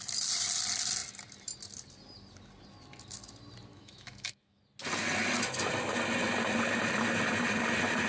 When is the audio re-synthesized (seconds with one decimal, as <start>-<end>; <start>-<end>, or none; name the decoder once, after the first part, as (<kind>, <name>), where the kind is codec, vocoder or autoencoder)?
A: 3.7-4.6 (autoencoder, DAC-VAE)